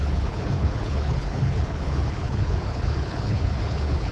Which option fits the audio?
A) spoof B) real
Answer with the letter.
A